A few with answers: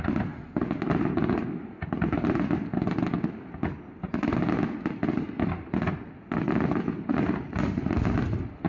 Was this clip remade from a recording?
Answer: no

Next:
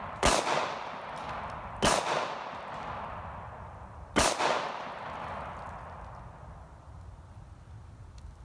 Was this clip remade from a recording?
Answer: no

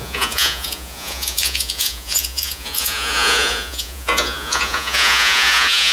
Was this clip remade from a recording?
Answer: yes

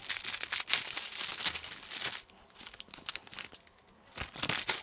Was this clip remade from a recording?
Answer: no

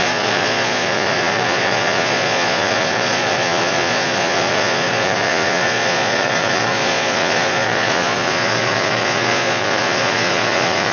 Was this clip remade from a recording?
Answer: yes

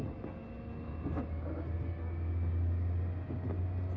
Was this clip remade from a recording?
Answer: no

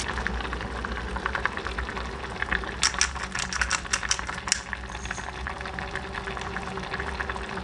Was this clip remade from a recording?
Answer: no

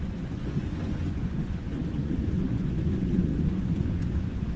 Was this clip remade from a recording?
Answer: yes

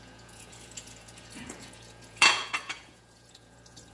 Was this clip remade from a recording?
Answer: yes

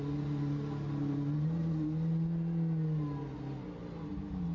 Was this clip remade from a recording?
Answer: no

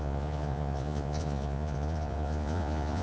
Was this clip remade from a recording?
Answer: yes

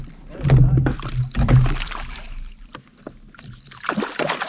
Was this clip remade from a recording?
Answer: no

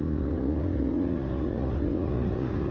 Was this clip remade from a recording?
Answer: yes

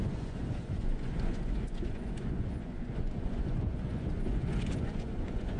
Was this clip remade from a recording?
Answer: yes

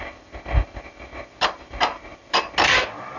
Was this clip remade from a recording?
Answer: no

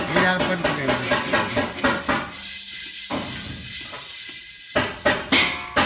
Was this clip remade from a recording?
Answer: no